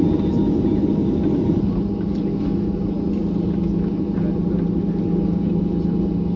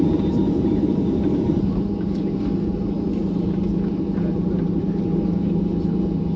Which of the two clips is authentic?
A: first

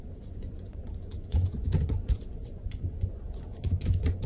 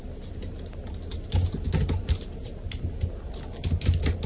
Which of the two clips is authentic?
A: second